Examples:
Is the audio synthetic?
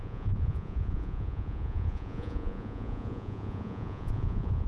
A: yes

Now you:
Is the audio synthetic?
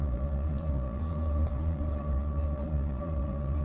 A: yes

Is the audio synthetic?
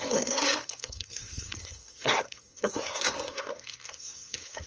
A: yes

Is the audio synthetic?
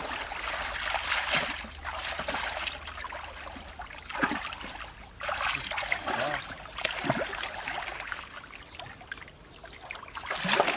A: no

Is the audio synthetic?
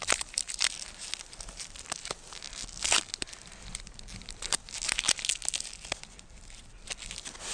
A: no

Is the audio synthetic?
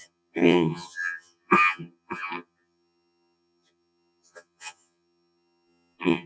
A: yes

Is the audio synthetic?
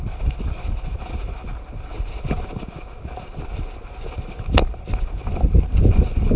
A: no